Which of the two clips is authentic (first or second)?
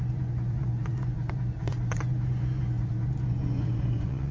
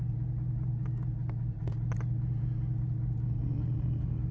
second